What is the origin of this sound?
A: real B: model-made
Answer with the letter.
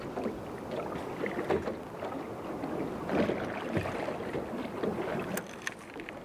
A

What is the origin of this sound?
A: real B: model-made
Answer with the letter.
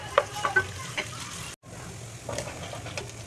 A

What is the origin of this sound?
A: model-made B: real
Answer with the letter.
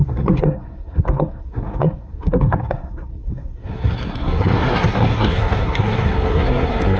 A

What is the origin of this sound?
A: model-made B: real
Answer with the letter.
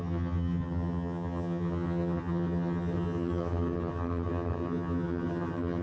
A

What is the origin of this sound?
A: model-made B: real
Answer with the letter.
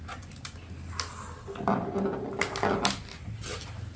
B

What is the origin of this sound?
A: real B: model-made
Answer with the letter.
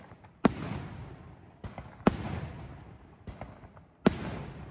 A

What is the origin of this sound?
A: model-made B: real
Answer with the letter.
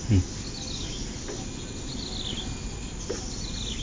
B